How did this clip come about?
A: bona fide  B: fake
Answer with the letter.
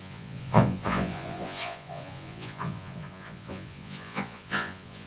B